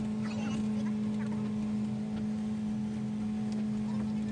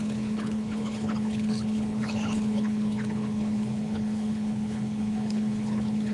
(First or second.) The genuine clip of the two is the first